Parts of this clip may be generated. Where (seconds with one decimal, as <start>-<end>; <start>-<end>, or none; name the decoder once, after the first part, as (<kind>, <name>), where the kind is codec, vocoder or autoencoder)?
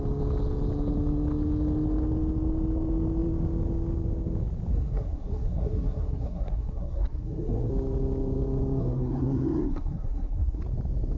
4.7-7.7 (codec, SNAC); 8.8-10.6